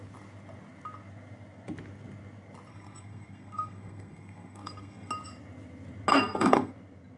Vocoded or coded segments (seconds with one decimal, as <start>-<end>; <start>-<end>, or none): 2.7-5.1; 6.1-6.7